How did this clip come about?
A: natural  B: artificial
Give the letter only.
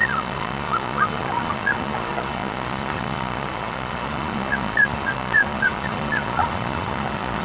B